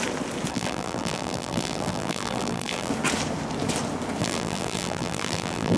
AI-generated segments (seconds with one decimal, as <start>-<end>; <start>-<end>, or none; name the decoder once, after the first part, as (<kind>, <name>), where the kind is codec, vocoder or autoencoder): 0.5-2.9 (vocoder, BigVGAN v2); 4.2-5.8